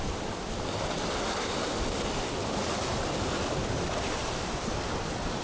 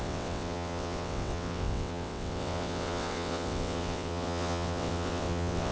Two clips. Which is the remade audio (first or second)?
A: second